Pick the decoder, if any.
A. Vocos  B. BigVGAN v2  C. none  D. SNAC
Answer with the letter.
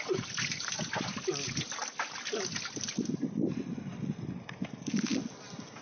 C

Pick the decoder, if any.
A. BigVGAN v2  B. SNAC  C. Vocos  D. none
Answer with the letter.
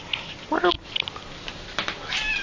D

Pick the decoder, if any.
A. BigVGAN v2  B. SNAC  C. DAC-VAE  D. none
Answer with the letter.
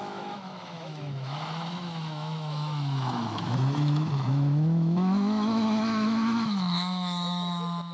C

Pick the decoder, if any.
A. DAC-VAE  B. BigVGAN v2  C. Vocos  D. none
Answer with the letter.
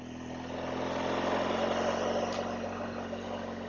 D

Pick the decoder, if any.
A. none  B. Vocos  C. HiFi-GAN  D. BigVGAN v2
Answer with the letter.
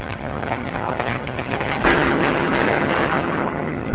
C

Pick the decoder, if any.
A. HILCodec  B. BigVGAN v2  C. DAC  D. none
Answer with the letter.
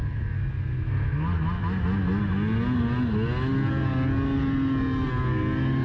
D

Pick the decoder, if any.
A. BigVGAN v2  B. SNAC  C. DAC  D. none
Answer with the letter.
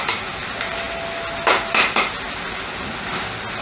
D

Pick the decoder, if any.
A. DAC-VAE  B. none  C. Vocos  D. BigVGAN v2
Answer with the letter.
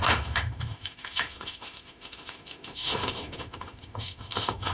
A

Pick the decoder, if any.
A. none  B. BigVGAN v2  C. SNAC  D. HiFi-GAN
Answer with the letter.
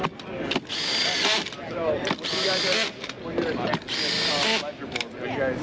A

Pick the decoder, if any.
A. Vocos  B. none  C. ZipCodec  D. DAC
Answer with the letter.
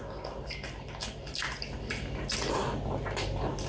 B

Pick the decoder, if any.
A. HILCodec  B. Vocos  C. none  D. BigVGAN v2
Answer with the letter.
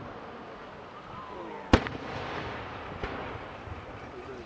C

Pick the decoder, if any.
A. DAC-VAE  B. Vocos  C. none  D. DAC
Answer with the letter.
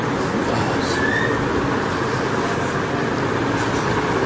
C